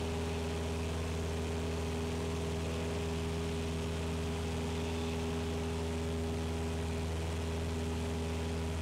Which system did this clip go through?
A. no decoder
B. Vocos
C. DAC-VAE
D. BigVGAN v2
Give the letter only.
A